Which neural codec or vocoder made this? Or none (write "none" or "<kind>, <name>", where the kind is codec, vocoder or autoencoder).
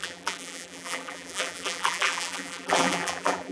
vocoder, BigVGAN v2